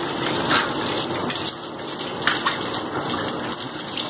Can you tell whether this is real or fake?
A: real